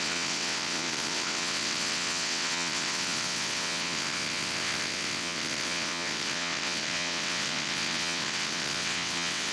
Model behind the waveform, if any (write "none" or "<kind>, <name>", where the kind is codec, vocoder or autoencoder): vocoder, WaveNeXt